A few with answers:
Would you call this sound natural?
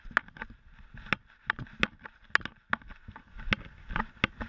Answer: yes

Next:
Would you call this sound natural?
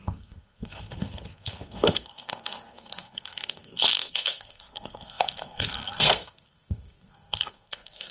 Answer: no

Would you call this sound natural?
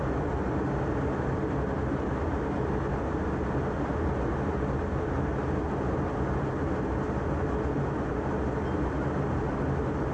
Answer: yes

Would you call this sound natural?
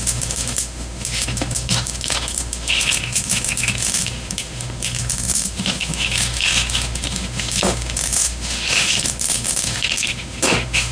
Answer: no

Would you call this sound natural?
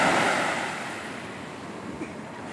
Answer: yes